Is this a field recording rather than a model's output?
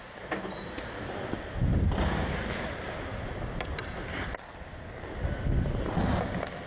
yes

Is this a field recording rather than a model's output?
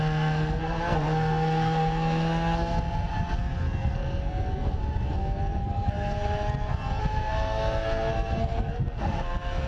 no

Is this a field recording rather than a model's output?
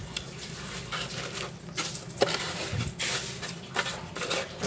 yes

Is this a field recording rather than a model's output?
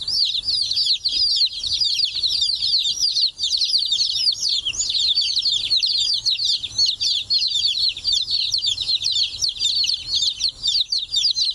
yes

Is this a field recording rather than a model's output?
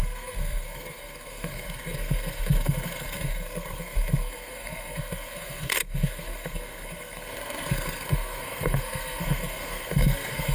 no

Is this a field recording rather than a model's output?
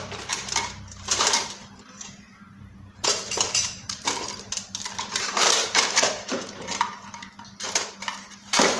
no